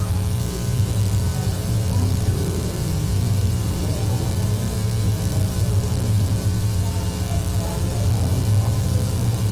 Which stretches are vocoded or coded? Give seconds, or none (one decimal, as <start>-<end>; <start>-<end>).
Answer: 0.0-9.5